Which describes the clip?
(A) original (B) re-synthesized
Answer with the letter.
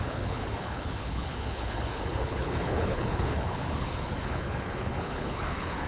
B